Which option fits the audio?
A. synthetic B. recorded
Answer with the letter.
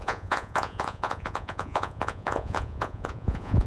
A